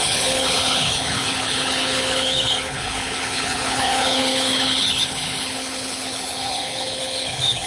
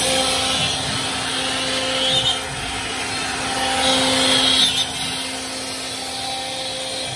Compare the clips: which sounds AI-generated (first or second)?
first